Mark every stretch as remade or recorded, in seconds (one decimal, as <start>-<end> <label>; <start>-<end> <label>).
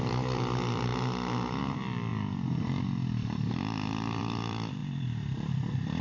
0.0-0.9 remade; 0.9-1.6 recorded; 1.6-2.1 remade; 2.1-4.2 recorded; 4.2-6.0 remade